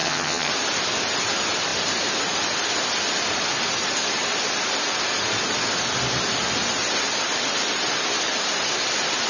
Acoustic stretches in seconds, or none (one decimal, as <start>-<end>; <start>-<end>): 0.5-9.3